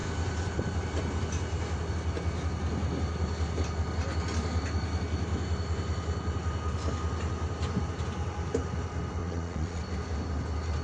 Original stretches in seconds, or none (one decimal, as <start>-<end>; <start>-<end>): 0.0-9.2; 9.8-10.8